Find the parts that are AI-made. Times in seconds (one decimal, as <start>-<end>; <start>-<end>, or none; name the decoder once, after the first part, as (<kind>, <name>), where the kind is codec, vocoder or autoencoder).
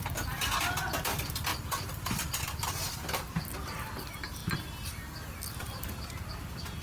1.5-2.4 (vocoder, BigVGAN v2)